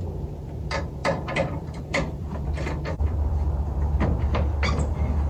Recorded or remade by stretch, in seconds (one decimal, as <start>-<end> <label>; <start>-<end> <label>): 0.0-1.0 recorded; 1.0-4.2 remade; 4.2-5.3 recorded